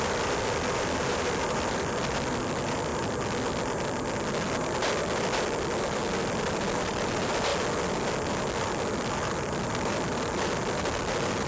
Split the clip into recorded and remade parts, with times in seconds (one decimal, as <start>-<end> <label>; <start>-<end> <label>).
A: 0.0-2.9 remade; 2.9-4.8 recorded; 4.8-7.5 remade; 7.5-8.6 recorded; 8.6-11.5 remade